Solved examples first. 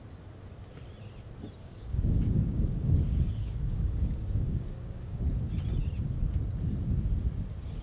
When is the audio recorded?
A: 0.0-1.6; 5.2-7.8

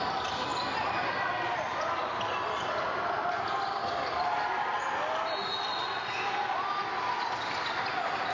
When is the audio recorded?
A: 0.0-8.3